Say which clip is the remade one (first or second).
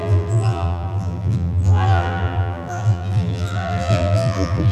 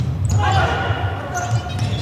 first